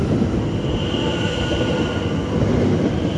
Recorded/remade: recorded